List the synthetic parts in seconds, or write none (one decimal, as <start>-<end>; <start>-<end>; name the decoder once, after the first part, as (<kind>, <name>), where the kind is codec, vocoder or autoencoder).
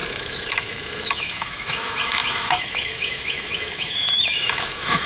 0.0-5.1 (autoencoder, DAC-VAE)